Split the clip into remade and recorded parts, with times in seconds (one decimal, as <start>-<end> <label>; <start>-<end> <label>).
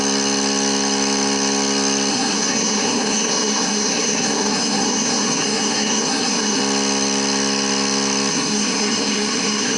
0.0-2.1 recorded; 2.1-6.6 remade; 6.6-8.3 recorded; 8.3-9.8 remade